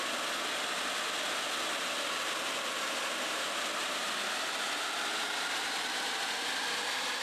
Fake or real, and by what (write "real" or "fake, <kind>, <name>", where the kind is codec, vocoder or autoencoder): real